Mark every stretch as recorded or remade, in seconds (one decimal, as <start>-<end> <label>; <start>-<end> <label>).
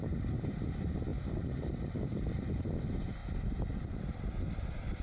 0.0-3.2 remade; 3.2-4.5 recorded; 4.5-5.0 remade